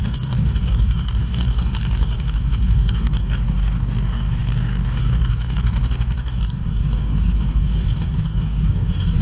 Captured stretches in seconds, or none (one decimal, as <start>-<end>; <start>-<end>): none